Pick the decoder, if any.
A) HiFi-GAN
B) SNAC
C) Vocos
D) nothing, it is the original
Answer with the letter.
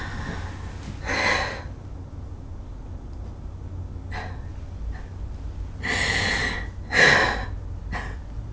D